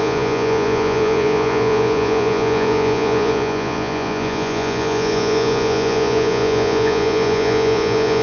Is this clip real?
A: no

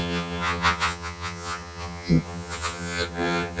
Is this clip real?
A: no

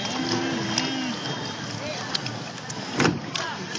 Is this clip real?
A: yes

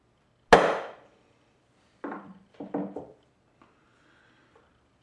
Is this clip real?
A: yes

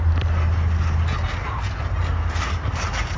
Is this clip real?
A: yes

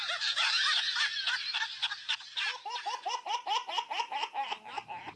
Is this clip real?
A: no